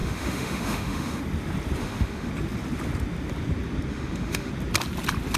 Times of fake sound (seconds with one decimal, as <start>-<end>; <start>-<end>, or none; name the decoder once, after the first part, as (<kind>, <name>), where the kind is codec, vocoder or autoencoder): 0.0-1.2 (autoencoder, DAC-VAE); 1.8-2.3; 3.9-4.5